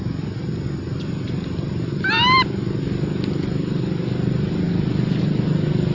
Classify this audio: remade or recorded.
recorded